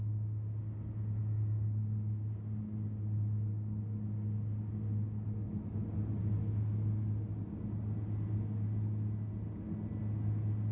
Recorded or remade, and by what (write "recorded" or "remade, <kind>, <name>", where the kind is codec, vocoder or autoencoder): recorded